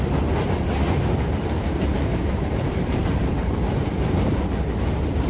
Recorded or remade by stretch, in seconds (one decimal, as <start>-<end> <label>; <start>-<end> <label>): 0.0-2.1 recorded; 2.1-3.2 remade; 3.2-5.3 recorded